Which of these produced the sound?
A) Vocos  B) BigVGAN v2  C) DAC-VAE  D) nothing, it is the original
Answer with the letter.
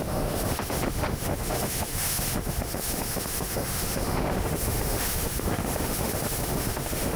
C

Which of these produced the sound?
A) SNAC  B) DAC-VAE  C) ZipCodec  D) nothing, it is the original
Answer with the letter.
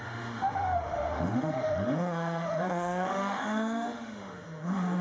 B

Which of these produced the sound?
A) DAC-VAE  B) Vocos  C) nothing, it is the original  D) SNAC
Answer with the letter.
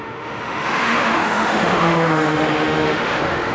A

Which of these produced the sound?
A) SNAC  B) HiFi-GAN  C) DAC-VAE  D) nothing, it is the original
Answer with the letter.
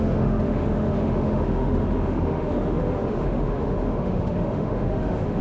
C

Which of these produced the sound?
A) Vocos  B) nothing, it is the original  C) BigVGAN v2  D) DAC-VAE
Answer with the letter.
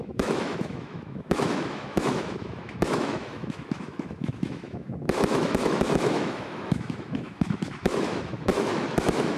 D